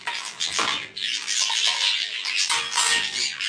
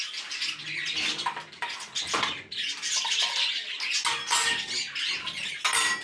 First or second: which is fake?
first